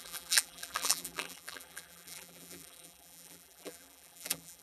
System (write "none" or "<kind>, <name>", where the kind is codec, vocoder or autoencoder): vocoder, BigVGAN v2